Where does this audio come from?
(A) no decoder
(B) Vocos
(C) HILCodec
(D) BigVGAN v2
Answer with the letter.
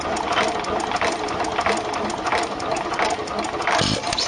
A